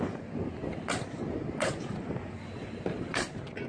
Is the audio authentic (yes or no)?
yes